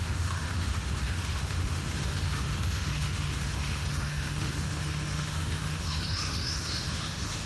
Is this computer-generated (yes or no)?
yes